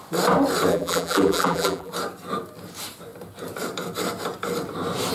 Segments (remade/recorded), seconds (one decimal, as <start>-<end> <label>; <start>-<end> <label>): 0.0-0.7 recorded; 0.7-1.9 remade; 1.9-5.1 recorded